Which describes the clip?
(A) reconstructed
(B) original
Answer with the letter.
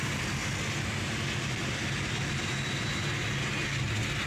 B